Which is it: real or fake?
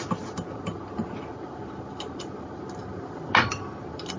real